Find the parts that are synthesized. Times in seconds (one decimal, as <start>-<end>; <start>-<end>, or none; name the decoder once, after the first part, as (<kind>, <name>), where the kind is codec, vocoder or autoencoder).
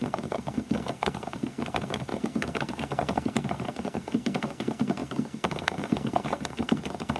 0.0-7.2 (codec, SNAC)